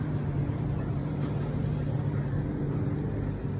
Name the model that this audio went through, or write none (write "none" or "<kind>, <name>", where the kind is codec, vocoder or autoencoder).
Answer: vocoder, BigVGAN v2